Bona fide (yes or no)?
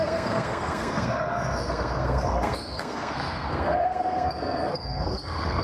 no